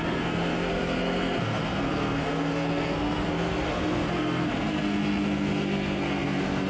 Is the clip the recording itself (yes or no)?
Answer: no